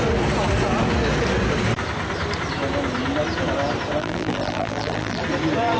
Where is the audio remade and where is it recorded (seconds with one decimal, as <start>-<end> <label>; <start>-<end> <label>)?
0.0-4.0 recorded; 4.0-5.2 remade; 5.2-5.8 recorded